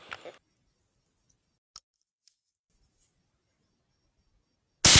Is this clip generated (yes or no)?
no